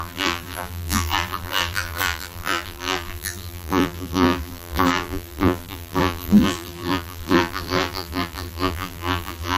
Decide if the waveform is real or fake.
fake